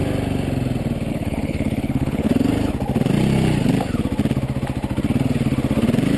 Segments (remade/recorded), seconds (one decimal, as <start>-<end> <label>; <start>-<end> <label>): 0.0-1.1 recorded; 1.1-2.3 remade; 2.3-6.2 recorded